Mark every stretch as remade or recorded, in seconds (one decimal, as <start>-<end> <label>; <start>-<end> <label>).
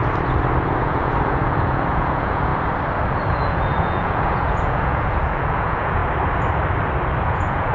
0.0-0.8 recorded; 0.8-2.5 remade; 2.5-3.3 recorded; 3.3-6.0 remade; 6.0-7.2 recorded; 7.2-7.7 remade